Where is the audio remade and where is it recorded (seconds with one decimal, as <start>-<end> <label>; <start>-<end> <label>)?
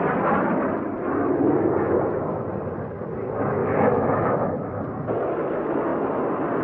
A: 0.0-3.6 recorded; 3.6-4.4 remade; 4.4-6.6 recorded